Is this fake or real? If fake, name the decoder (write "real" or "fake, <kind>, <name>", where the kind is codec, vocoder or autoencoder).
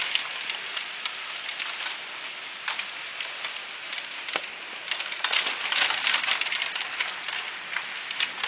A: real